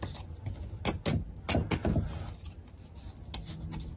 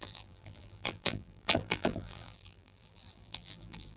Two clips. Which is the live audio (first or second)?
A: first